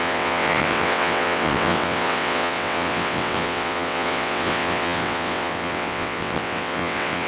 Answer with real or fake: fake